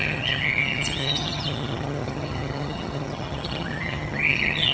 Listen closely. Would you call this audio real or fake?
fake